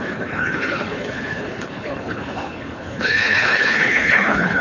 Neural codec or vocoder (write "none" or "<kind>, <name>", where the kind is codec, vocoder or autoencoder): codec, HILCodec